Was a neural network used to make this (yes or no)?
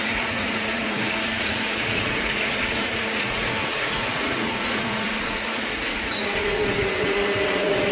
yes